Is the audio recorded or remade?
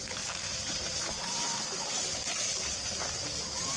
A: recorded